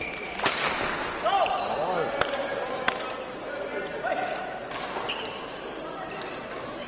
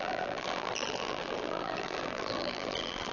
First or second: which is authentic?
first